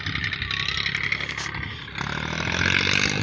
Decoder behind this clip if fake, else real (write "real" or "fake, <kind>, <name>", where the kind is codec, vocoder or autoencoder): real